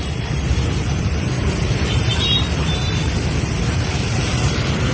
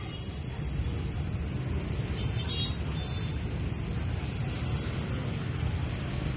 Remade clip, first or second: first